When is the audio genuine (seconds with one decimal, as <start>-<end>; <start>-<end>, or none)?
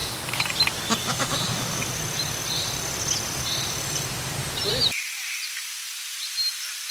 0.5-1.0; 1.9-6.9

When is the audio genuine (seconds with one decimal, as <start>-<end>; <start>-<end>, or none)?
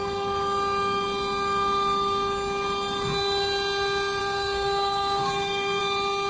0.0-4.2; 5.8-6.3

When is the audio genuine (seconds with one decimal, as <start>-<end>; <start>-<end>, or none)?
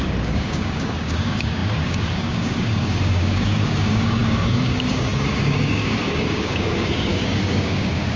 none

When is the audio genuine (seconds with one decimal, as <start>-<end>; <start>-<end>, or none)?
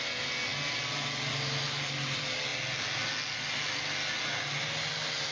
0.0-5.3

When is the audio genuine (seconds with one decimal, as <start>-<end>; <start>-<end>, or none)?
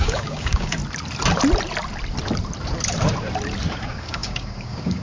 0.8-3.8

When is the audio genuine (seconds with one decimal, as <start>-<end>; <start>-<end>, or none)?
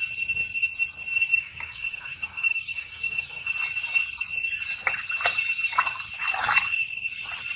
0.0-1.3; 3.5-7.6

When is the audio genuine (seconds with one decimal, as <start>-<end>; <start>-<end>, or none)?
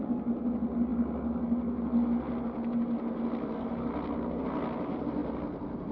0.0-5.9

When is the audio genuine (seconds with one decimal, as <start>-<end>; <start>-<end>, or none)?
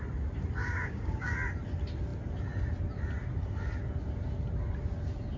0.0-0.6; 1.3-5.4